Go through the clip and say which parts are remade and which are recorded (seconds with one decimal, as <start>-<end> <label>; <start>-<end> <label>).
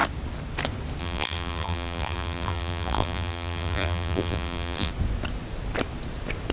0.0-1.0 recorded; 1.0-4.9 remade; 4.9-6.5 recorded